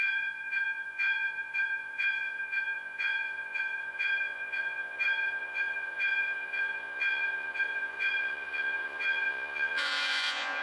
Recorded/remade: remade